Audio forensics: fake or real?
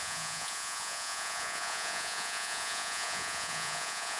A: fake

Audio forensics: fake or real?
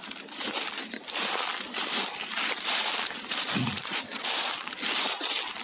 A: real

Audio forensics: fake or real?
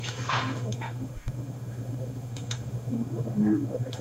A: fake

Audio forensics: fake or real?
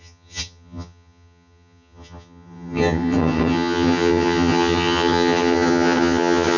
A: fake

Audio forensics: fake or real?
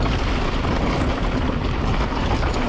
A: real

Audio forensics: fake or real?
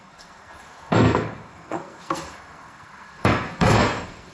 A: fake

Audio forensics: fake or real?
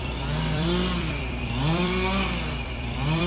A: fake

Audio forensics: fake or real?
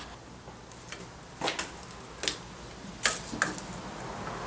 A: real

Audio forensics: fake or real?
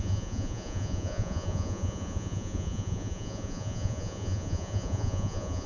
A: fake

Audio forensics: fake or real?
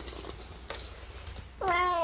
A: real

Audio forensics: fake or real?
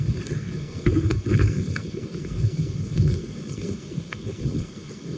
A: fake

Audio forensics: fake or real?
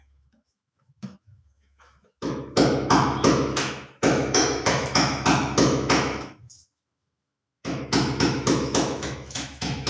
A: fake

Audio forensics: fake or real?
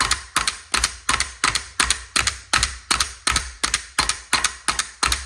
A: real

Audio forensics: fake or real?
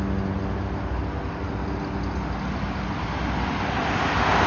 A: real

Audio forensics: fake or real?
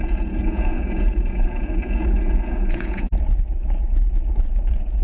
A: fake